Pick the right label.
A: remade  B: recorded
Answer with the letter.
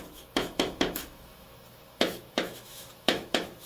A